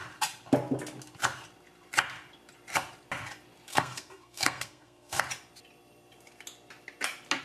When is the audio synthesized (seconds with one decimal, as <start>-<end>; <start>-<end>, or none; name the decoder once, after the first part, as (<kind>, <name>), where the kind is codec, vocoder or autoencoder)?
3.7-5.2 (codec, SNAC)